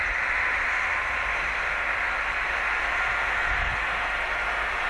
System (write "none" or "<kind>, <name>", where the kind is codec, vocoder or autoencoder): none